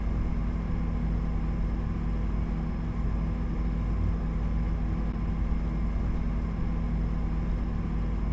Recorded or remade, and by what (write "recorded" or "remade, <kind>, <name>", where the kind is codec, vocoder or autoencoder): recorded